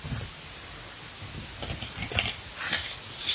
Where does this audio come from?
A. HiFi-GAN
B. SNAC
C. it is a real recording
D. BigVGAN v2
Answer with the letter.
C